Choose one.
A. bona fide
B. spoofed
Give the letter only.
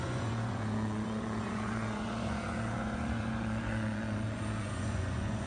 B